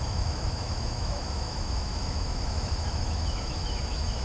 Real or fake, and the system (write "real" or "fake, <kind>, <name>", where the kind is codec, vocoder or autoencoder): fake, autoencoder, DAC-VAE